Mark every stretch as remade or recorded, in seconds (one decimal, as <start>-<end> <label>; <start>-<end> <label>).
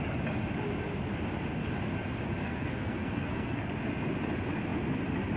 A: 0.0-2.4 recorded; 2.4-3.7 remade; 3.7-5.4 recorded